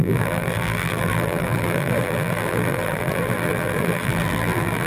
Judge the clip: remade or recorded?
remade